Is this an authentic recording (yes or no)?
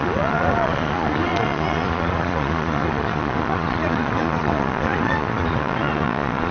no